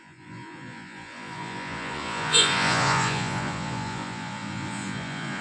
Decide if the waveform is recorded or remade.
remade